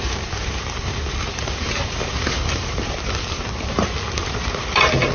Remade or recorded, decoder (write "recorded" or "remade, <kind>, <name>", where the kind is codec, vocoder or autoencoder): remade, vocoder, BigVGAN v2